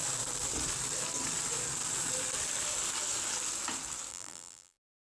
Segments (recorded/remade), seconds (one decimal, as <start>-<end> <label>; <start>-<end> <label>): 0.0-4.1 recorded; 4.1-5.0 remade